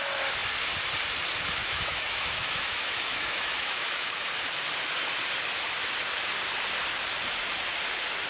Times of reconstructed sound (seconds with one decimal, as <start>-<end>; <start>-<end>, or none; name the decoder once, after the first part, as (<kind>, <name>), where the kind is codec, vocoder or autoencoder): 1.6-4.3 (autoencoder, DAC-VAE)